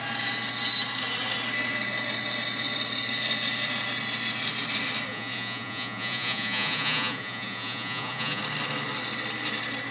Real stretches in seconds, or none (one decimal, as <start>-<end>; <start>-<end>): 0.0-5.1; 8.4-9.9